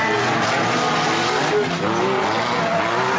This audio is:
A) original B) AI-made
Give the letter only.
A